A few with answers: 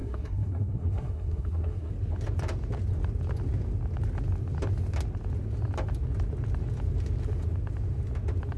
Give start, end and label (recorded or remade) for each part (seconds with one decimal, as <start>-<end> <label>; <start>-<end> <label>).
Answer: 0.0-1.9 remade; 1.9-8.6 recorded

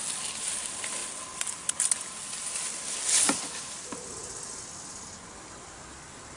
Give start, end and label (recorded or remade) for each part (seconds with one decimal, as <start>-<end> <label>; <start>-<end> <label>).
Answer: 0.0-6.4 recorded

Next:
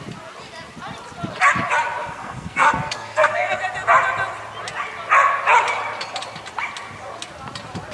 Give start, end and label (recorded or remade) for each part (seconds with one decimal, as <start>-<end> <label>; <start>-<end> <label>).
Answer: 0.0-2.0 recorded; 2.0-3.6 remade; 3.6-7.9 recorded

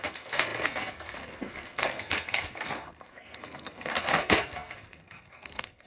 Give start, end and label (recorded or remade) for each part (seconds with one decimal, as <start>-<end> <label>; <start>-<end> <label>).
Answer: 0.0-5.9 remade

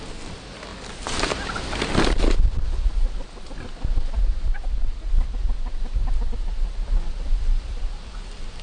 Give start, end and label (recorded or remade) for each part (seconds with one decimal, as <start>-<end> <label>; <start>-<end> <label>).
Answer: 0.0-8.6 recorded

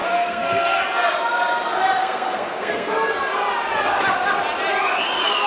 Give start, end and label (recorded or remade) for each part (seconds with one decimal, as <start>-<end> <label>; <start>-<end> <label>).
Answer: 0.0-0.8 remade; 0.8-2.0 recorded; 2.0-2.9 remade; 2.9-5.5 recorded

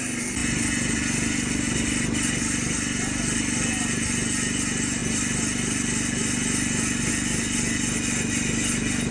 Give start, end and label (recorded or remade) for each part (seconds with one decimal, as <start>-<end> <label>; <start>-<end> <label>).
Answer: 0.0-9.1 recorded